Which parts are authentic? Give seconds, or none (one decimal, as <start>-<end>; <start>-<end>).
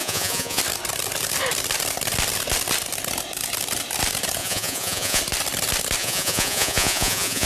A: 0.6-4.4; 5.2-6.0